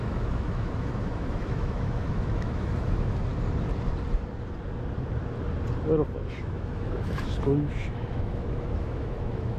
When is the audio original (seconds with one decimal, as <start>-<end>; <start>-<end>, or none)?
3.3-6.2